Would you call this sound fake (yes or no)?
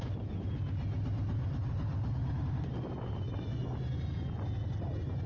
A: no